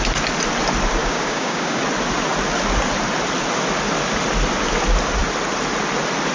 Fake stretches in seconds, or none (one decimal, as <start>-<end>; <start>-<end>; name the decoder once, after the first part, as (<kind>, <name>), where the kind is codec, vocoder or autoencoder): 1.0-1.8 (codec, DAC)

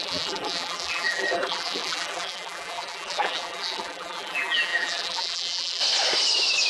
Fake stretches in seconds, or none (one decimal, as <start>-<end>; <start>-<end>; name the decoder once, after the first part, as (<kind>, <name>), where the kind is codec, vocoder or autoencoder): 0.0-5.8 (vocoder, BigVGAN v2)

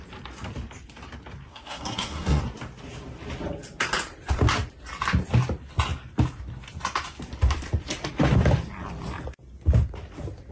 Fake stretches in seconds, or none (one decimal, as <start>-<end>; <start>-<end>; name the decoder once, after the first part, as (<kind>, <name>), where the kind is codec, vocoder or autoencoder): 1.5-2.4 (codec, SNAC)

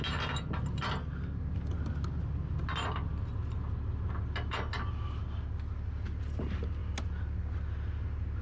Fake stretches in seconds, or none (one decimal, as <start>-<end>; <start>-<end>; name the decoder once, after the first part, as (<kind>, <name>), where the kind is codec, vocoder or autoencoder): none

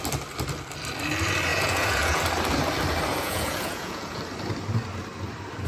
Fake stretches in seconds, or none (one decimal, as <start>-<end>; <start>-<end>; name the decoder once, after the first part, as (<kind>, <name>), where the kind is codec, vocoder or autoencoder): 1.5-2.2 (vocoder, Vocos); 3.1-4.2

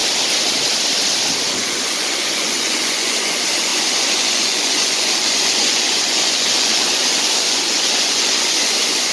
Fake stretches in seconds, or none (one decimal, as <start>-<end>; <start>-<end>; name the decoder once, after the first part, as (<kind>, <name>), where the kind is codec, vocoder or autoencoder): 1.4-9.1 (vocoder, Vocos)

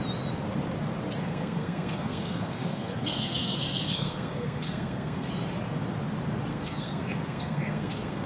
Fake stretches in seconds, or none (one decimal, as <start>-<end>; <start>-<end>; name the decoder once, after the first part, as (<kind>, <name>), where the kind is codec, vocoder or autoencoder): 1.2-5.3 (codec, SNAC); 6.5-8.3

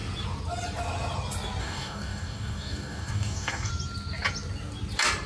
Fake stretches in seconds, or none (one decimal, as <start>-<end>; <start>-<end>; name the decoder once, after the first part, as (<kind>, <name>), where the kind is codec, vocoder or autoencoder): 1.6-3.7 (codec, DAC)